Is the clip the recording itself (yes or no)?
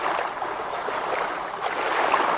yes